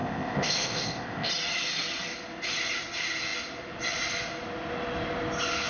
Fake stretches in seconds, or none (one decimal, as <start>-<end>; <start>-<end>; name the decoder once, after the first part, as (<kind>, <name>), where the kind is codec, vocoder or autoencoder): 0.0-1.3 (codec, ZipCodec)